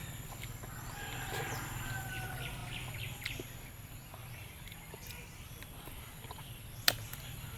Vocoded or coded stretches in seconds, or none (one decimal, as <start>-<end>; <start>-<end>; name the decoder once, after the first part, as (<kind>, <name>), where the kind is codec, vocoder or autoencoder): 0.0-7.6 (vocoder, BigVGAN v2)